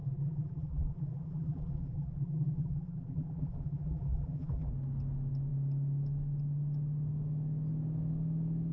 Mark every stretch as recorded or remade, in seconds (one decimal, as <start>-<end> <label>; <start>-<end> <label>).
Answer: 0.0-4.7 remade; 4.7-8.7 recorded